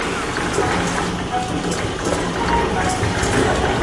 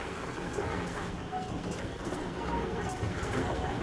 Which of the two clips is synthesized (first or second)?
second